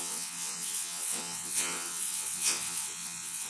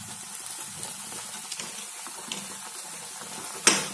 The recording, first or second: second